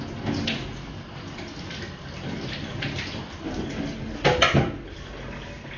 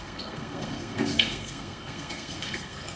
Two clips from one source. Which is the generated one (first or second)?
second